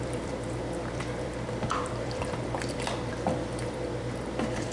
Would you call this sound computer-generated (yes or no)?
yes